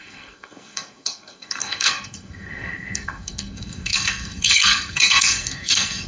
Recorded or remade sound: remade